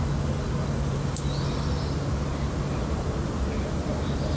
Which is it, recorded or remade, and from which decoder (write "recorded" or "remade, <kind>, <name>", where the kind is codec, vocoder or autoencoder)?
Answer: recorded